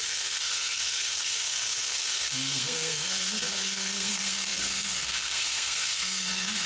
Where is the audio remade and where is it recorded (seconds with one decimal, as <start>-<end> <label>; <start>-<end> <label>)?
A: 0.0-6.7 remade